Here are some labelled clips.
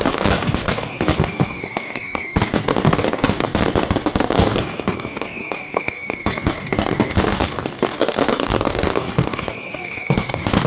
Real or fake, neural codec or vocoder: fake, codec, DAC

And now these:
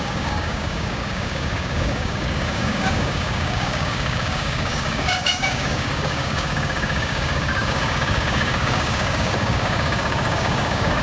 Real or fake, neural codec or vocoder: fake, codec, DAC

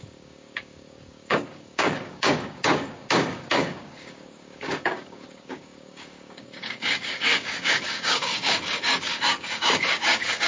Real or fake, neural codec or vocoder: fake, codec, DAC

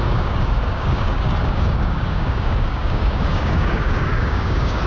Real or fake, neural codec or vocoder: fake, codec, DAC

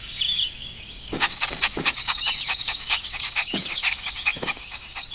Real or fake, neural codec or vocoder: fake, codec, DAC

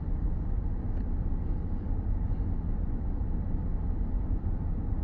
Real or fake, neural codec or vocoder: real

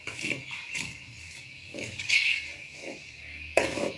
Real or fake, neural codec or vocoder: fake, codec, DAC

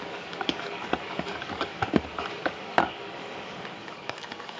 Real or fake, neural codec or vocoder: fake, codec, DAC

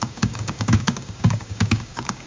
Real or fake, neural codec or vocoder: fake, codec, DAC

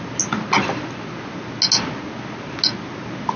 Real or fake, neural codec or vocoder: real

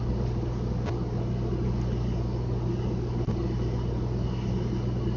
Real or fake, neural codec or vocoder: real